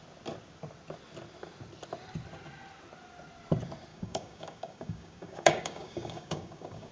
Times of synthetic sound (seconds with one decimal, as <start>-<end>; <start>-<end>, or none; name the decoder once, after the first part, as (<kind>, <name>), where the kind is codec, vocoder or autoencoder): 3.9-6.9 (codec, DAC)

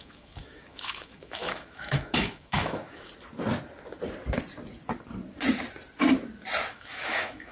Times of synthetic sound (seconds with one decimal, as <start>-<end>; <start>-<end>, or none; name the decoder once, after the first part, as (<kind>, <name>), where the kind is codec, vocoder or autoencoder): 0.0-3.1 (autoencoder, DAC-VAE); 6.7-7.5

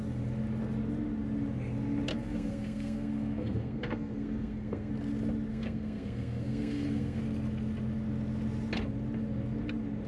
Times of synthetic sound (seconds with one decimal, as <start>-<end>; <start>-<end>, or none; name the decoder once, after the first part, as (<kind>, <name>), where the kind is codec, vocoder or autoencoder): 2.1-4.9 (codec, SNAC); 5.5-7.2

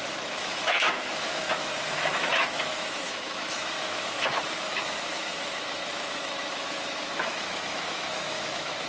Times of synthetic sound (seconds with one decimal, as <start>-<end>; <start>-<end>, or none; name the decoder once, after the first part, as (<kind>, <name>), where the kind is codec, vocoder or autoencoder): 0.0-8.9 (autoencoder, DAC-VAE)

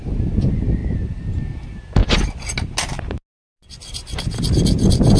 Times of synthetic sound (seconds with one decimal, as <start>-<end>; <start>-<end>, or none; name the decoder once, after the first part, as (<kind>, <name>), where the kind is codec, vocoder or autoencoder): none